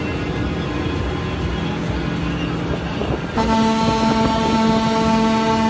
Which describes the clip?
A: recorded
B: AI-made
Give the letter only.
A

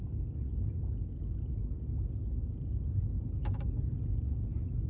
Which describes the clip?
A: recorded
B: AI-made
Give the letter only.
A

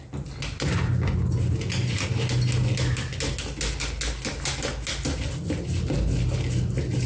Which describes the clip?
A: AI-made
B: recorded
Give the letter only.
B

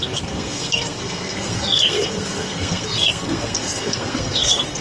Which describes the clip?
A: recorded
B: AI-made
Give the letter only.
B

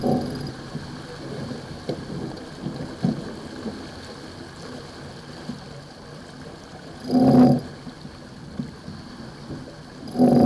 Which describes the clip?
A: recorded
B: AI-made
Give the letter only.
A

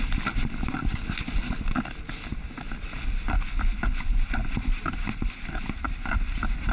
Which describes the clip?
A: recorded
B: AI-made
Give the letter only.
A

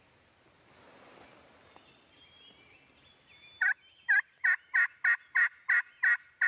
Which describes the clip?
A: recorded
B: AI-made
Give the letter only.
A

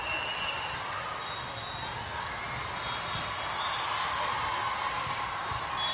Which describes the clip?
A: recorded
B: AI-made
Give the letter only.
A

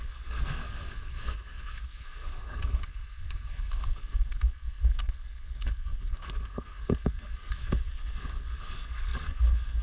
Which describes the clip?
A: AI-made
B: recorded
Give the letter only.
A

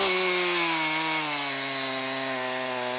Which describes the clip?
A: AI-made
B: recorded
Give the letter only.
B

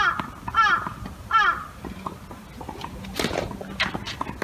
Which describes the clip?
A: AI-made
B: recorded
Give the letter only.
B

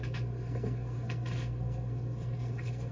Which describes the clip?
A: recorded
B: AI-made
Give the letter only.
B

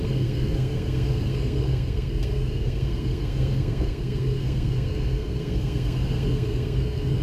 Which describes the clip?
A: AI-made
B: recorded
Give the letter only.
A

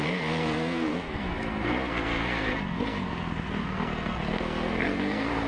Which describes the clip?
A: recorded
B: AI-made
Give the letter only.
B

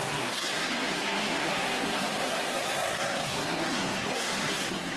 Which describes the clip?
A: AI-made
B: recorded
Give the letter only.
A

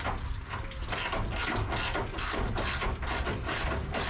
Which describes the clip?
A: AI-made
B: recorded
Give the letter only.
B